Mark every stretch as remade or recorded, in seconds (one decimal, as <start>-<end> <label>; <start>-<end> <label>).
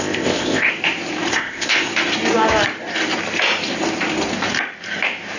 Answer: 0.0-0.7 remade; 0.7-1.3 recorded; 1.3-1.9 remade; 1.9-5.4 recorded